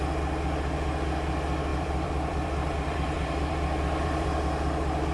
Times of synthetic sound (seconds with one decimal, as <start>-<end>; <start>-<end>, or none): 1.7-4.4